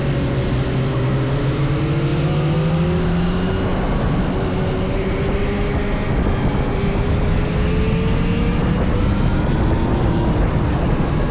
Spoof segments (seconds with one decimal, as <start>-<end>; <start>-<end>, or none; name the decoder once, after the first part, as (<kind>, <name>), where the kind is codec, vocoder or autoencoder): none